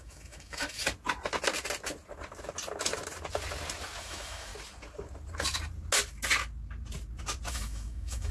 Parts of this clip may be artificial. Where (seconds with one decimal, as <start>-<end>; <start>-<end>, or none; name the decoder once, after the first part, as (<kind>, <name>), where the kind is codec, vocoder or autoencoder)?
0.0-0.8 (autoencoder, DAC-VAE); 4.0-4.5; 7.5-8.3